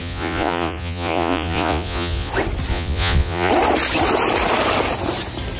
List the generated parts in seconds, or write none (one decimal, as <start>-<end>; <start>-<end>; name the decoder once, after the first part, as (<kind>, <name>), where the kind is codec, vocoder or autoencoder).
0.0-2.3 (vocoder, Vocos); 2.7-3.5